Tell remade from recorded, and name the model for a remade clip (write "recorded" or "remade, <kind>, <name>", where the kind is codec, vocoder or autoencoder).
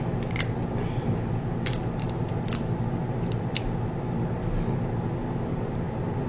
recorded